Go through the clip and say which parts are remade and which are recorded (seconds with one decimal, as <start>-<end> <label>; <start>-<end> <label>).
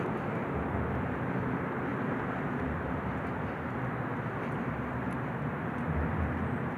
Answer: 0.0-6.8 recorded